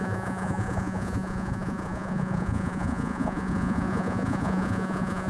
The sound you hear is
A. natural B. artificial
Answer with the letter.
B